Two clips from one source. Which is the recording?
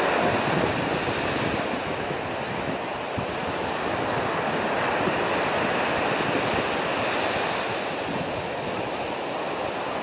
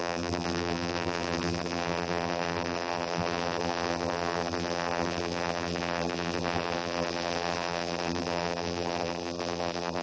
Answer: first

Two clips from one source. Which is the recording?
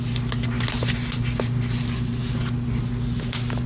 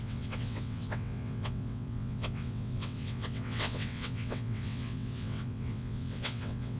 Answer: first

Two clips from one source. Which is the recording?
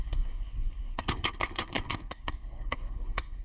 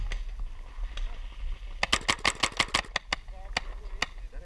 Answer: second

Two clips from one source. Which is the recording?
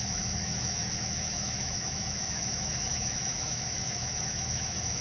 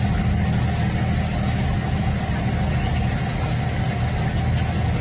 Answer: second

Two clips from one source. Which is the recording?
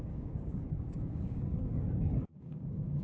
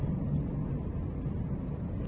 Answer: second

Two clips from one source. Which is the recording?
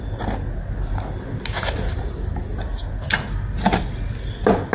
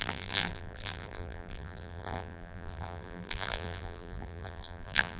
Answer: first